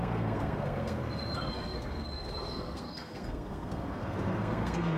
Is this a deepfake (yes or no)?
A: yes